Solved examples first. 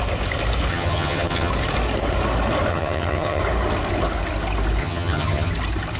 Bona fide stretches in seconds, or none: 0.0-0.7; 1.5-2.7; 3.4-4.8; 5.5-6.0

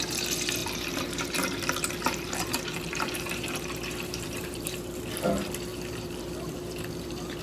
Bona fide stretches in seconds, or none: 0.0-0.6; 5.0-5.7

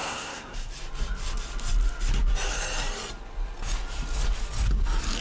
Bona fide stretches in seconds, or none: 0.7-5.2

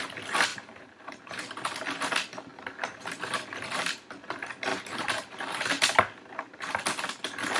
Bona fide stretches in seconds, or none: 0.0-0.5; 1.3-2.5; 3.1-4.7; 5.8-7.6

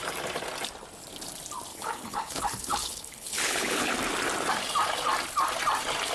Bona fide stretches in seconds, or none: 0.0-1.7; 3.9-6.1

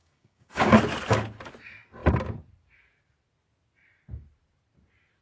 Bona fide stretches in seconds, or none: 0.8-5.2

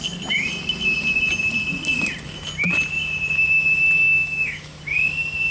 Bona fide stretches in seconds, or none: 0.0-4.1; 4.8-5.5